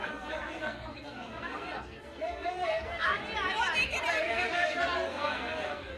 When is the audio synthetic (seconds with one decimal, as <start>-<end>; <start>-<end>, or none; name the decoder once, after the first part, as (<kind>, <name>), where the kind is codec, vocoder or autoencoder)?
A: 0.0-3.2 (codec, SNAC); 4.1-6.0